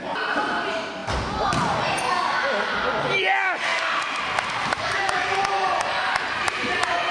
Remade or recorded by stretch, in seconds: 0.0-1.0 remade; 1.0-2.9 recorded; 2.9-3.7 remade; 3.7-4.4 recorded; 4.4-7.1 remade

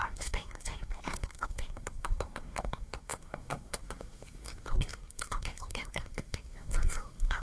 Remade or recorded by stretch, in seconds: 0.0-7.4 remade

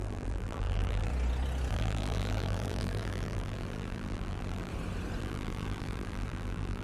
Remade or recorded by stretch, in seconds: 0.0-1.1 remade; 1.1-1.7 recorded; 1.7-4.7 remade; 4.7-5.2 recorded; 5.2-6.8 remade

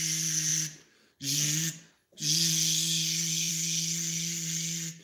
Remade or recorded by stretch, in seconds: 0.0-5.0 recorded